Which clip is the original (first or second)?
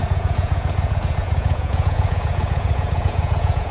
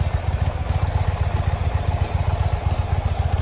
second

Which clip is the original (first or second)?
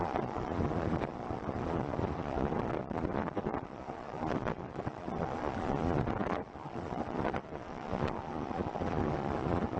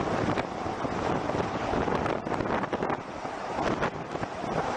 second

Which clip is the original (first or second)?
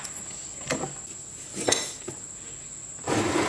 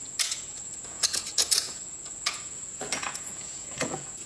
first